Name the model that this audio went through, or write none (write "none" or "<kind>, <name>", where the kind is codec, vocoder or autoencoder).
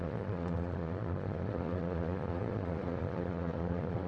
vocoder, Vocos